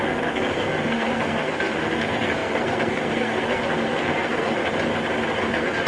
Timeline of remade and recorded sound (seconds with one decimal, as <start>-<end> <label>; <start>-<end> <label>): 0.0-4.6 remade; 4.6-5.5 recorded; 5.5-5.9 remade